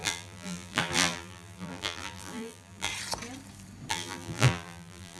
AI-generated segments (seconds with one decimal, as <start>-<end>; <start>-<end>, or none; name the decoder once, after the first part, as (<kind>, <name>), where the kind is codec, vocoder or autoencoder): 0.0-2.9 (vocoder, BigVGAN v2); 3.9-5.2